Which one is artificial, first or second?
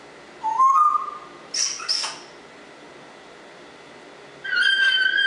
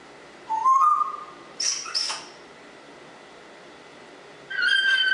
second